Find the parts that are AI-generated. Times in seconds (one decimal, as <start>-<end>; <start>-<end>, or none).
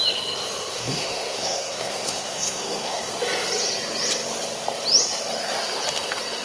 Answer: 0.7-3.1